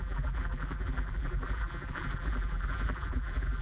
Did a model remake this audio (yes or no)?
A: yes